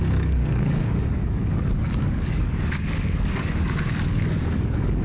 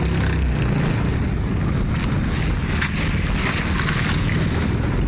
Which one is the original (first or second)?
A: second